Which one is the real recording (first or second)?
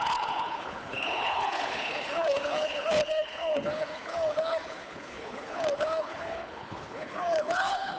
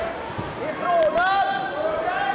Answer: second